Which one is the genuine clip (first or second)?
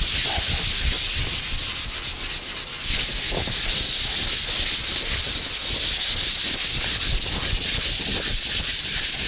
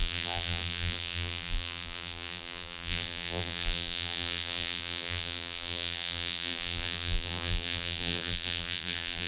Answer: first